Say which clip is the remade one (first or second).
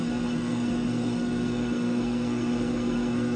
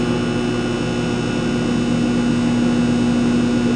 first